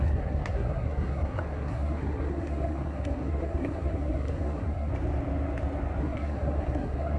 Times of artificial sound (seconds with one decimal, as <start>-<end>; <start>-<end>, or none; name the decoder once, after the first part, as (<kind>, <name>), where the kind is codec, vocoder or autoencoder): 0.0-4.9 (codec, SNAC); 6.0-7.2